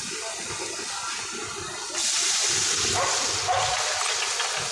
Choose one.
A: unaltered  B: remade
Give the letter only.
A